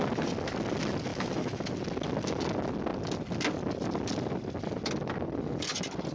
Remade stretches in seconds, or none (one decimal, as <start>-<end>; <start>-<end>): 1.1-1.7